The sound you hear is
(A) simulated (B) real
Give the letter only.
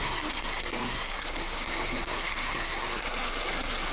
A